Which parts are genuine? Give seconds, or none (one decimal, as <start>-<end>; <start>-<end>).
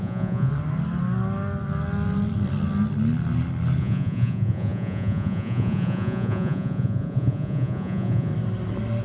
0.5-3.8; 8.3-9.0